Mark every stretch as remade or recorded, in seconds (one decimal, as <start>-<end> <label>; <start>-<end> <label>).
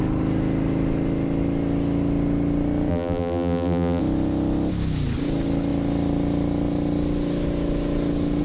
0.0-2.9 recorded; 2.9-4.0 remade; 4.0-8.4 recorded